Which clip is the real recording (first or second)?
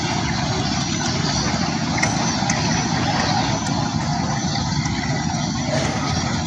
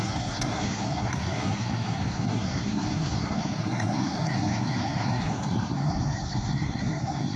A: first